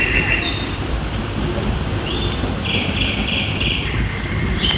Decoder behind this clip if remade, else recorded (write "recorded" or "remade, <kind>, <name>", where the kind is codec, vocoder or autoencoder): remade, vocoder, BigVGAN v2